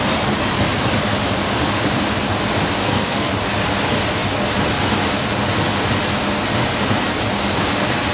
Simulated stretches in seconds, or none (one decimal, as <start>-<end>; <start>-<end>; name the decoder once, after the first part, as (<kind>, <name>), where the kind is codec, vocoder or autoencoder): 2.8-3.3 (codec, SNAC)

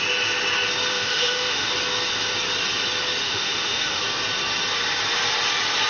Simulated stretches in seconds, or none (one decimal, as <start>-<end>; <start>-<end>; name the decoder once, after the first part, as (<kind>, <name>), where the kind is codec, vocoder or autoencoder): 0.9-1.7 (autoencoder, DAC-VAE); 3.2-4.0

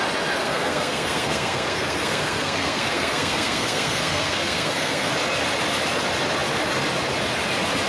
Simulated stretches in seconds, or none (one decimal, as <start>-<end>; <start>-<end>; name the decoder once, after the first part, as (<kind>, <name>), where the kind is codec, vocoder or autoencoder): 0.4-5.1 (codec, SNAC)

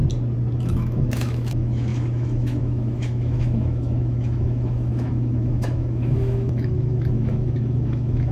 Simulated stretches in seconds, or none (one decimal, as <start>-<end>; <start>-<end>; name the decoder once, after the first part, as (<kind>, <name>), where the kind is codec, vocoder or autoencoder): 0.6-8.3 (autoencoder, DAC-VAE)